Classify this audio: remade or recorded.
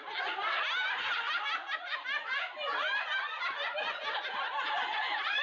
recorded